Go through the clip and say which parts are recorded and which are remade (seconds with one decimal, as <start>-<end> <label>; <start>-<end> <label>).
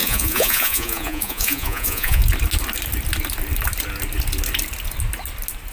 0.0-2.2 remade; 2.2-5.7 recorded